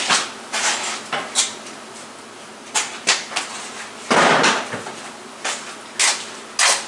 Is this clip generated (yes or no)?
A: no